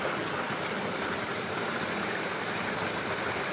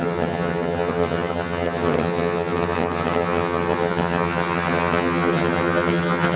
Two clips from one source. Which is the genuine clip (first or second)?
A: first